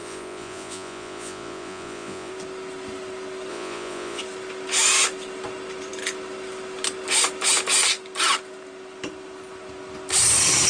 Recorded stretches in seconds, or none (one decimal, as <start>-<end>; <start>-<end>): 2.3-3.5; 4.2-10.7